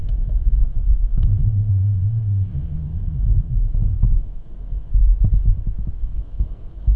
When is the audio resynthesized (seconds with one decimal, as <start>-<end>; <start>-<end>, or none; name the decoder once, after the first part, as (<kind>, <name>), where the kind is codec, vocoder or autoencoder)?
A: 0.0-4.9 (codec, SNAC); 6.0-7.0